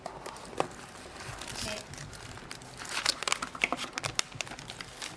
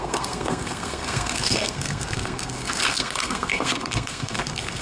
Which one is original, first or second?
first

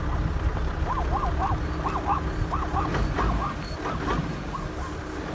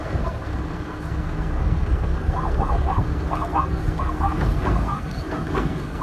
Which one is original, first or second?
first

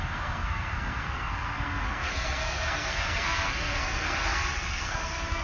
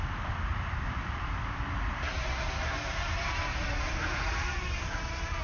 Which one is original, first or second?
second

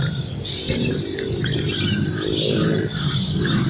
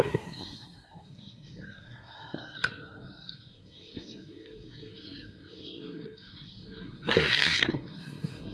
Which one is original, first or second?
first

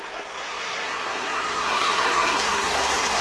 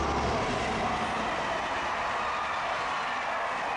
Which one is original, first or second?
second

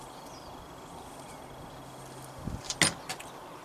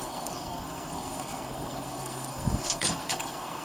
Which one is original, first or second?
first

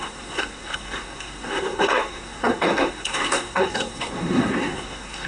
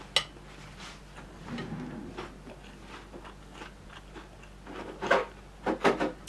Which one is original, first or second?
second